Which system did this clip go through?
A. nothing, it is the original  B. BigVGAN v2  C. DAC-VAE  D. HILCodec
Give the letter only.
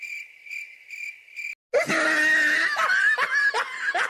A